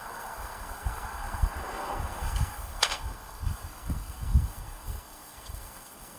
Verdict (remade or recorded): remade